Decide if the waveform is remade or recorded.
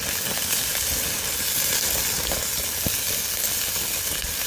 recorded